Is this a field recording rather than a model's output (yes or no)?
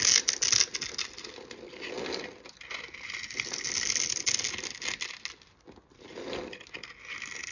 yes